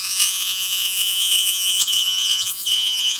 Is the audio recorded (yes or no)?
no